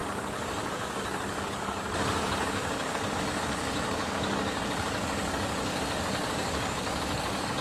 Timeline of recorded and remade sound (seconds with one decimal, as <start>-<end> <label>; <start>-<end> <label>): 0.0-7.6 remade